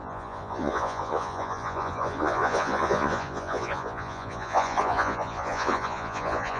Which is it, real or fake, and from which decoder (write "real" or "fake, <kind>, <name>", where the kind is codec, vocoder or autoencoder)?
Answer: fake, vocoder, Vocos